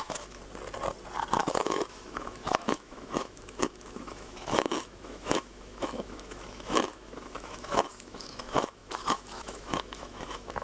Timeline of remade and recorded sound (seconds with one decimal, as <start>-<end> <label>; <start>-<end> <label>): 0.0-0.4 remade; 0.4-1.4 recorded; 1.4-10.6 remade